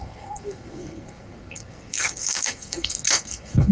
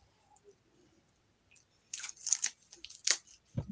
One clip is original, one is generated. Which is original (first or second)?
second